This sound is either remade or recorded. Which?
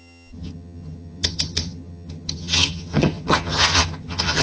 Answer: remade